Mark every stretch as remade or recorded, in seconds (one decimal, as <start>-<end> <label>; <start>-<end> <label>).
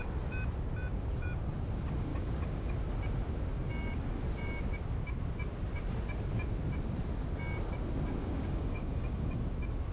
0.0-2.1 recorded; 2.1-2.7 remade; 2.7-8.2 recorded; 8.2-9.3 remade; 9.3-9.9 recorded